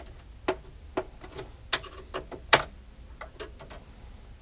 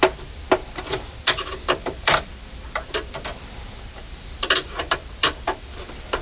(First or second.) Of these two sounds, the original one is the first